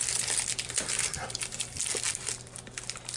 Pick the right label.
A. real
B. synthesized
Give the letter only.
A